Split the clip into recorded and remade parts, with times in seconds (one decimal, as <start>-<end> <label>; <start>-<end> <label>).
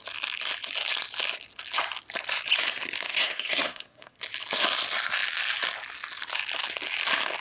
0.0-3.1 recorded; 3.1-4.2 remade; 4.2-7.4 recorded